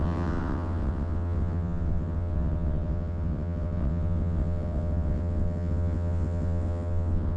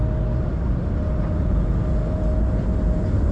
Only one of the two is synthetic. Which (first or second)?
first